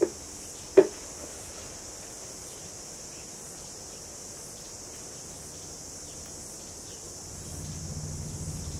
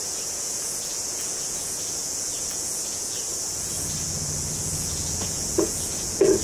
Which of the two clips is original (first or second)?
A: first